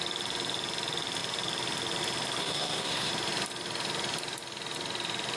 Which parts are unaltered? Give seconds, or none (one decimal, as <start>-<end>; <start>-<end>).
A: 0.0-2.4; 3.1-5.4